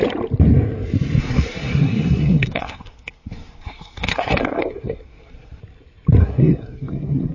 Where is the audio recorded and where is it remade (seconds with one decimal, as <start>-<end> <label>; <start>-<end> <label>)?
0.0-1.2 recorded; 1.2-5.6 remade; 5.6-6.2 recorded; 6.2-7.3 remade